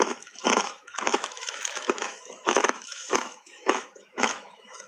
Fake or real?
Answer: fake